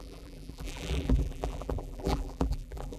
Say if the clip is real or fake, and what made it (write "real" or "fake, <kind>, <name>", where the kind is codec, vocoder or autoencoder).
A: fake, vocoder, BigVGAN v2